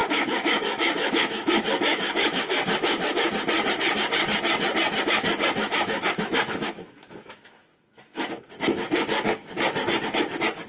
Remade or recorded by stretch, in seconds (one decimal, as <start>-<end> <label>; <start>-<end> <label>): 0.0-3.3 remade; 3.3-5.6 recorded; 5.6-8.3 remade; 8.3-10.7 recorded